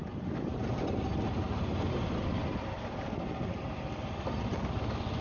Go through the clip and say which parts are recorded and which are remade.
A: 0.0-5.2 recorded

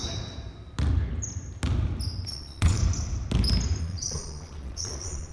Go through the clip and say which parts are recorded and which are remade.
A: 0.0-2.3 recorded; 2.3-2.8 remade; 2.8-3.8 recorded; 3.8-5.3 remade

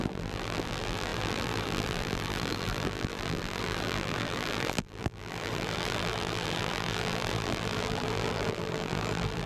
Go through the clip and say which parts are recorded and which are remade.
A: 0.0-9.5 remade